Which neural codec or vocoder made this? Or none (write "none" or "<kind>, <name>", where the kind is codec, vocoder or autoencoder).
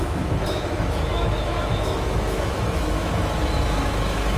autoencoder, DAC-VAE